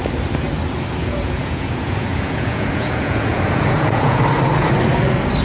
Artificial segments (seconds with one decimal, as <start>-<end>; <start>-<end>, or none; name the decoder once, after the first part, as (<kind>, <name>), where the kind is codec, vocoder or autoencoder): 1.0-4.2 (vocoder, Vocos)